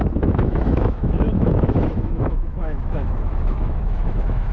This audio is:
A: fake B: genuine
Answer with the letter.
A